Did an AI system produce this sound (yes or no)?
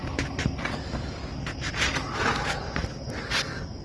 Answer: no